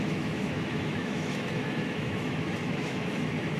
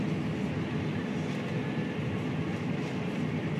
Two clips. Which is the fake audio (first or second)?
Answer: first